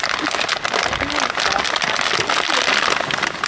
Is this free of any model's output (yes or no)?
yes